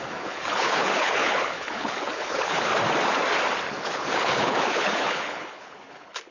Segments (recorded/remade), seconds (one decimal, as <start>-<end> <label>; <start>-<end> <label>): 0.0-2.7 remade; 2.7-3.7 recorded; 3.7-6.3 remade